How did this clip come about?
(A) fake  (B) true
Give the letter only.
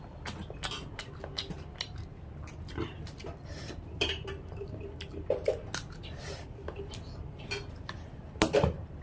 B